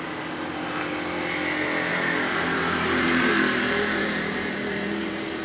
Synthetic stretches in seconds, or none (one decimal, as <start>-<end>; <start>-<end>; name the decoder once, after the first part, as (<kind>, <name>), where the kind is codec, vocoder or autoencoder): 1.9-5.4 (vocoder, BigVGAN v2)